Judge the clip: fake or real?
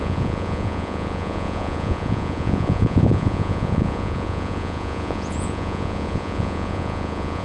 fake